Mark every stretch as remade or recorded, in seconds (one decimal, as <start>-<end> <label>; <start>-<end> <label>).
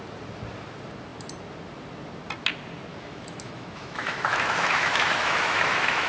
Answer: 0.0-2.9 recorded; 2.9-6.1 remade